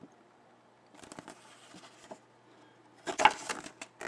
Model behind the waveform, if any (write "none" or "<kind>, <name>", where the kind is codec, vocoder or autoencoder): none